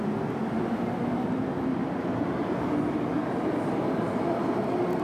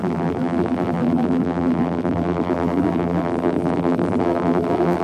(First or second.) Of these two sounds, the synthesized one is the second